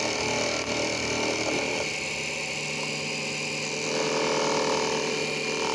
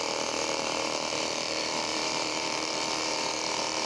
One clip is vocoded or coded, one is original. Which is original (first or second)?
first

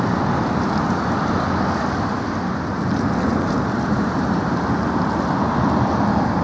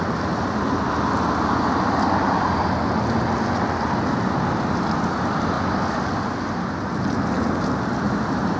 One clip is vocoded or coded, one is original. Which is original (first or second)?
second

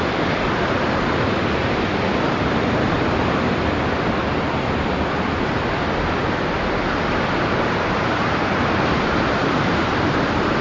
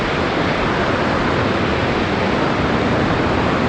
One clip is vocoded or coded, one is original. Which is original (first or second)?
second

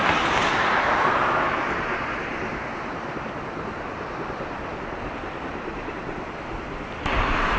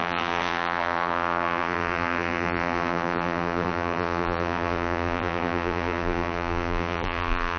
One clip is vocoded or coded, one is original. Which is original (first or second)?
first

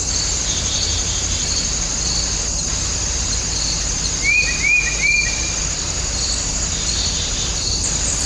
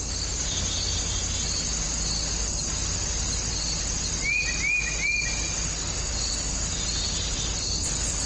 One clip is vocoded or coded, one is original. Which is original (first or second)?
second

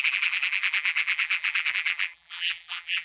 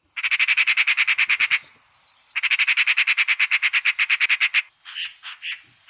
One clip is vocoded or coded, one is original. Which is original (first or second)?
second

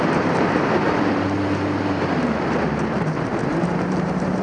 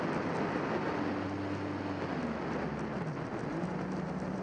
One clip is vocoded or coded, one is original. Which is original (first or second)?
second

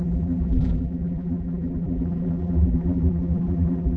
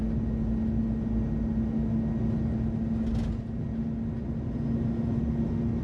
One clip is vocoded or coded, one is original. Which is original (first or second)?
second